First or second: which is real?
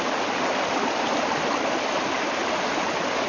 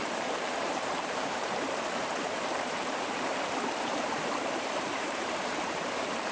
first